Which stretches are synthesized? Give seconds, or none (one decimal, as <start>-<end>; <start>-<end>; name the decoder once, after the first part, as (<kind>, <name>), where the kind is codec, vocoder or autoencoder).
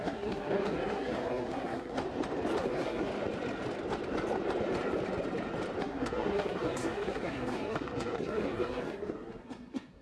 0.0-2.0 (codec, SNAC); 2.6-3.1; 5.8-10.0